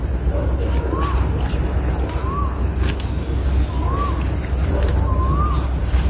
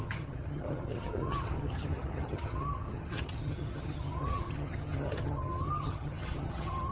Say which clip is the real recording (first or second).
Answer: first